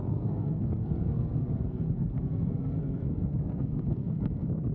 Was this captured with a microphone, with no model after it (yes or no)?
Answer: no